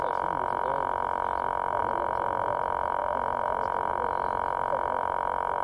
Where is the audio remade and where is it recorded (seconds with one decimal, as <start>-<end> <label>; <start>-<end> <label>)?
0.0-5.6 recorded